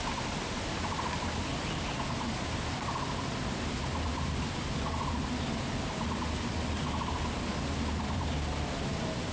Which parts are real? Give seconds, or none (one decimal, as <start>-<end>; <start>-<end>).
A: 0.0-4.1; 5.4-9.3